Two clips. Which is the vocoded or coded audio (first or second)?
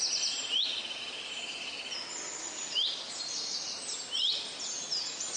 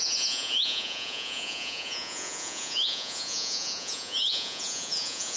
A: second